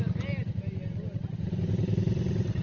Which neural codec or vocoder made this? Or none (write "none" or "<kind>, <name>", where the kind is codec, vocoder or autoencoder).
none